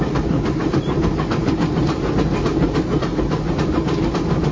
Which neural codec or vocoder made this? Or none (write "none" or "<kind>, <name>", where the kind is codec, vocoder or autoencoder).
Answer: none